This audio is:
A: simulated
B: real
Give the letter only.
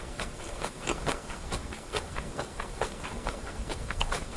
A